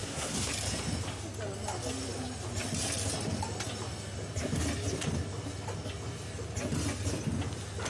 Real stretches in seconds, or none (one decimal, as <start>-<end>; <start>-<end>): 0.5-7.9